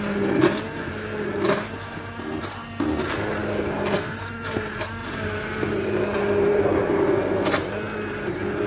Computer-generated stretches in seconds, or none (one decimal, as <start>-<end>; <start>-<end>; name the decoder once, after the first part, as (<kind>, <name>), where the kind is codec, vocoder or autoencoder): 5.0-6.6 (vocoder, BigVGAN v2)